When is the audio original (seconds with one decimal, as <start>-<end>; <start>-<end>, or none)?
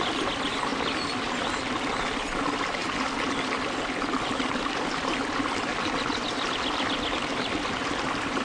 0.7-2.0; 2.8-4.2; 5.7-6.5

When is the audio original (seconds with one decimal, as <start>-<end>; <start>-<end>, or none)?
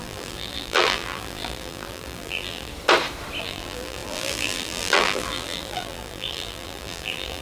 2.7-3.4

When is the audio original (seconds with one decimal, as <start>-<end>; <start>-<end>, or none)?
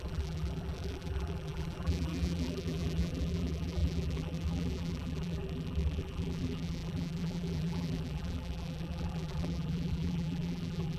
none